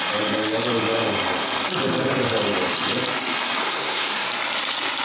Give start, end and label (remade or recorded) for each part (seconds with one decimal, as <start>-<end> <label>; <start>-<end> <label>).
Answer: 0.0-3.6 recorded; 3.6-4.3 remade; 4.3-5.0 recorded